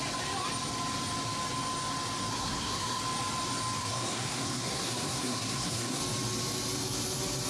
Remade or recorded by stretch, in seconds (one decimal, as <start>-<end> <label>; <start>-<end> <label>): 0.0-2.3 recorded; 2.3-3.0 remade; 3.0-3.8 recorded; 3.8-6.0 remade; 6.0-7.5 recorded